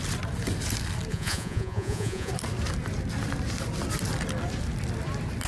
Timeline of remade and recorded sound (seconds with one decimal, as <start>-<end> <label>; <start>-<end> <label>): 0.0-1.1 recorded; 1.1-2.3 remade; 2.3-5.5 recorded